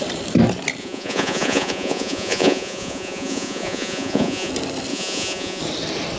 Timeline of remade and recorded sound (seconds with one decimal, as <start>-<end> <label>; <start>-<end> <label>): 0.0-0.8 recorded; 0.8-4.5 remade; 4.5-4.9 recorded; 4.9-5.6 remade; 5.6-6.2 recorded